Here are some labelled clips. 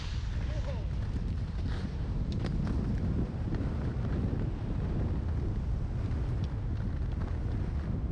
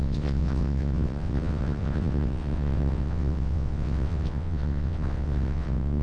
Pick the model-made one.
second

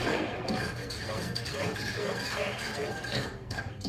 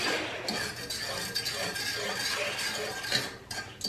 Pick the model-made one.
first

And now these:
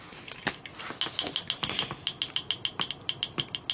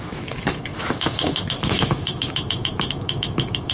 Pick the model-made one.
second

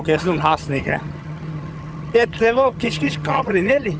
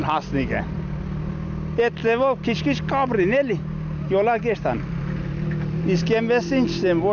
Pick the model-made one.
first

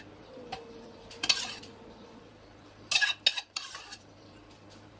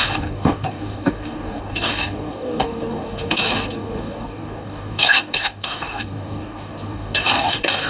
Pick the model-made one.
second